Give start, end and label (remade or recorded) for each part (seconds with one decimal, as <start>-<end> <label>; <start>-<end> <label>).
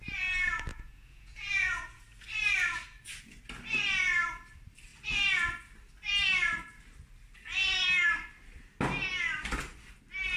0.0-0.7 recorded; 0.7-2.0 remade; 2.0-10.4 recorded